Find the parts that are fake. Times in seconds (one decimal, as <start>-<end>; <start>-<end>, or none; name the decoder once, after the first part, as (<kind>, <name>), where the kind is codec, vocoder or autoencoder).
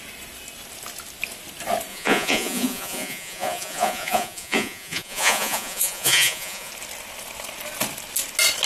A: 1.9-6.7 (vocoder, Vocos)